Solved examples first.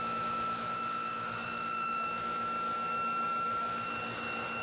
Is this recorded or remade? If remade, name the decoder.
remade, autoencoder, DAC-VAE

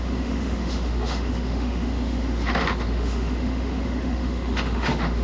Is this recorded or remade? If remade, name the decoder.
remade, autoencoder, DAC-VAE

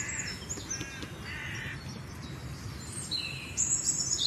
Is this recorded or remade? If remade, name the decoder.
recorded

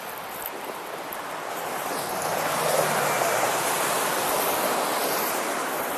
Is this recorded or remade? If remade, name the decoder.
recorded